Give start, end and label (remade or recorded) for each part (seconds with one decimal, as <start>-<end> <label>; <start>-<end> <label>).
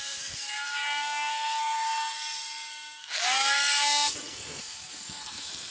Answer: 0.0-5.7 remade